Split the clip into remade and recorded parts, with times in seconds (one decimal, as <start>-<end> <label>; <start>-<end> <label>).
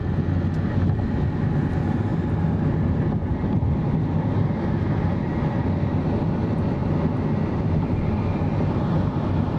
0.0-9.6 recorded